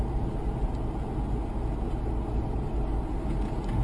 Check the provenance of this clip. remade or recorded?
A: recorded